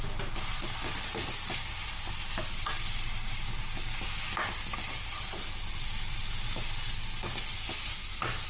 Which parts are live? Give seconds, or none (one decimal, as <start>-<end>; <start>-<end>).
0.0-8.5